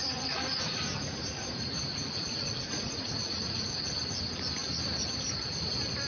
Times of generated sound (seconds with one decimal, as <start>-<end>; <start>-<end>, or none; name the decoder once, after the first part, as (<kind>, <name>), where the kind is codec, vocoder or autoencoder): 0.0-3.7 (vocoder, Vocos)